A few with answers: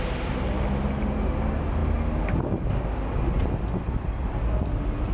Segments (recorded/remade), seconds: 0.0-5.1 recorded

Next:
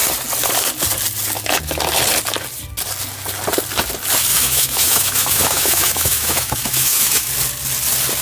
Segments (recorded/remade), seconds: 0.0-4.3 recorded; 4.3-7.3 remade; 7.3-8.2 recorded

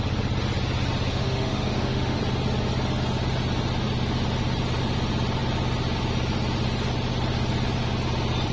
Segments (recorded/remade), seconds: 0.0-1.1 recorded; 1.1-2.2 remade; 2.2-8.5 recorded

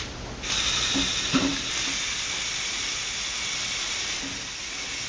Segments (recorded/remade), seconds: 0.0-5.1 recorded

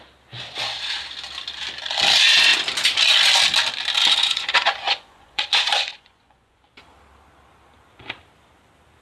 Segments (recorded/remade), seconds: 0.0-4.2 recorded; 4.2-6.6 remade; 6.6-9.0 recorded